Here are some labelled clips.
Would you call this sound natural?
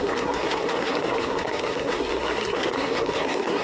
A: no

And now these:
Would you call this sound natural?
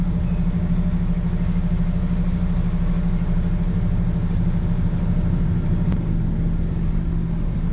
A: yes